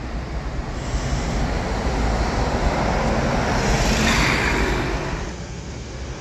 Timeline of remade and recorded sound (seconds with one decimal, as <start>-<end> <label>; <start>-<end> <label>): 0.0-6.2 recorded